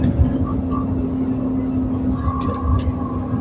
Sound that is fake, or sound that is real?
real